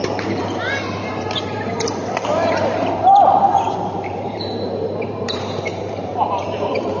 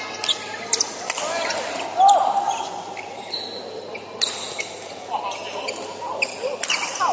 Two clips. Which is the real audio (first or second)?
second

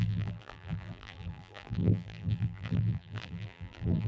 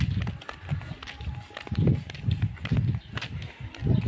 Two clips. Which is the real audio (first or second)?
second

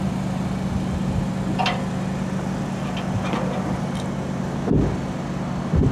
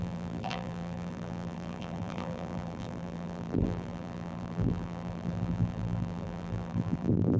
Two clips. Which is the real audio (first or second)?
first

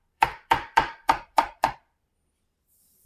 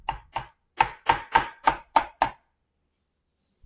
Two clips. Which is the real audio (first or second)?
second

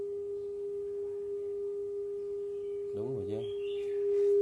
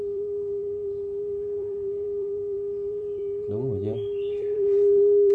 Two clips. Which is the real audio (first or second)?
first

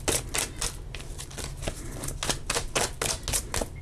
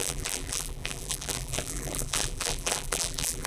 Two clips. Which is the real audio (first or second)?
first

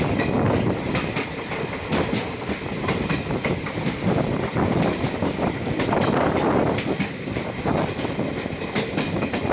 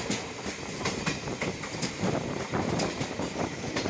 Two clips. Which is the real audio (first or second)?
second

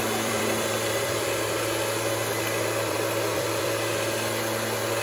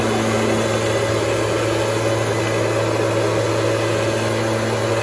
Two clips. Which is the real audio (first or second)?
second